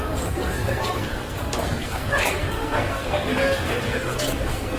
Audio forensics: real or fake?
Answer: fake